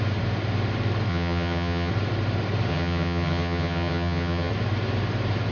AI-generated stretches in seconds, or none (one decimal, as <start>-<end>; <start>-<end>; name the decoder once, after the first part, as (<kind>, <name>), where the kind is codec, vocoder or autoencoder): 1.1-1.9 (vocoder, HiFi-GAN); 2.7-4.5